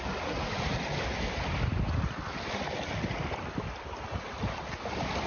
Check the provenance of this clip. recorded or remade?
recorded